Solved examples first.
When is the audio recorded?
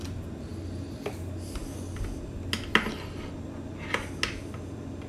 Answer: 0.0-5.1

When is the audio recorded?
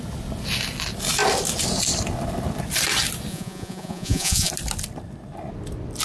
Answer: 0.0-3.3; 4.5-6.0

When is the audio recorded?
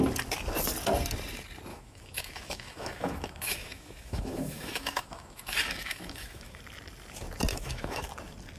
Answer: 0.0-1.7; 6.6-7.5; 8.1-8.6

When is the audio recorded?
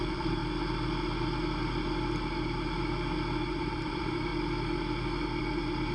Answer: 0.4-3.5; 4.3-5.4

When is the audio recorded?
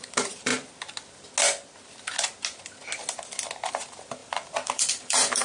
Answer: 0.5-3.7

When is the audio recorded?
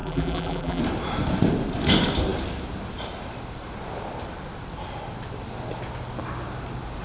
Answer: 0.8-7.0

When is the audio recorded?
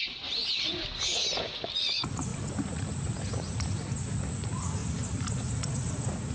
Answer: 0.8-1.4; 4.8-5.6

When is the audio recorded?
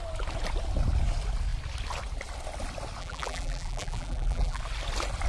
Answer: 0.0-3.0; 4.6-5.3